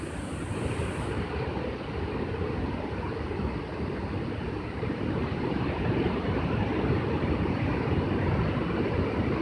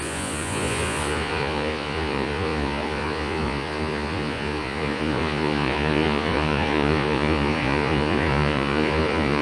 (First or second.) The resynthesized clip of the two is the second